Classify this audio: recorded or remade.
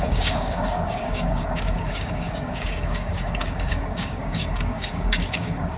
remade